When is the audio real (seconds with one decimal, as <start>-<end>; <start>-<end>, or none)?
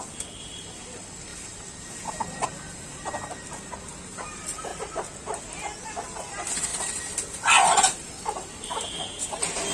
0.0-9.7